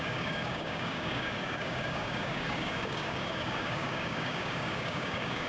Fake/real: fake